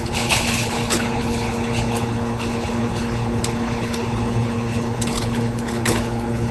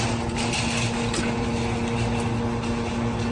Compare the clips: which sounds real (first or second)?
second